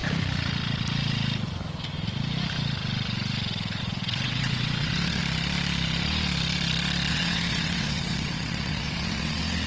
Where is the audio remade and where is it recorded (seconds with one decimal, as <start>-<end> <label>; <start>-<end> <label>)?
0.0-3.8 recorded; 3.8-5.2 remade; 5.2-7.1 recorded; 7.1-9.7 remade

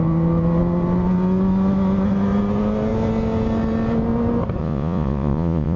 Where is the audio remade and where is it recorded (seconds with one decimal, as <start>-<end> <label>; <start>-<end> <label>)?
0.0-4.6 recorded; 4.6-5.8 remade